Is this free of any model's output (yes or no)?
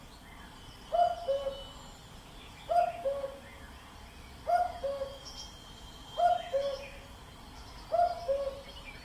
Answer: yes